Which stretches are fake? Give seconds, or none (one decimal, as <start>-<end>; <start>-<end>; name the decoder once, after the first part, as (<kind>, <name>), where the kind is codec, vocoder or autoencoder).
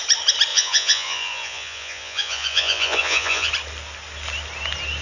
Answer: 0.5-3.5 (vocoder, Vocos)